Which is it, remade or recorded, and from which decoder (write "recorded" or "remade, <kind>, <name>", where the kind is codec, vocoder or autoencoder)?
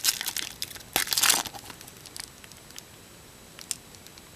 recorded